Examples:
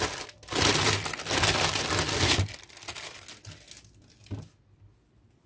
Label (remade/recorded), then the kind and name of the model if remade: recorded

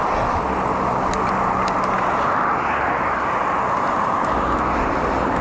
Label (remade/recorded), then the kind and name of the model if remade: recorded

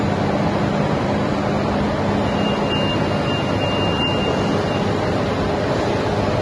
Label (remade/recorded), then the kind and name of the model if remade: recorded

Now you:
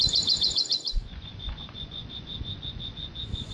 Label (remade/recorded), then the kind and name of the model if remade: remade, vocoder, Vocos